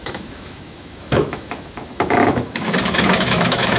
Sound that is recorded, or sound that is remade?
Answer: remade